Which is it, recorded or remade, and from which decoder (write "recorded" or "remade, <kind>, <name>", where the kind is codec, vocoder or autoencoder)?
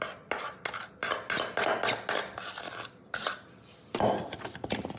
recorded